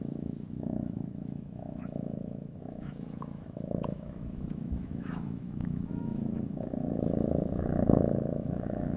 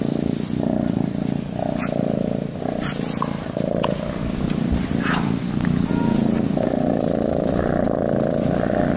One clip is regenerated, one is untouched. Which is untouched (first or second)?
second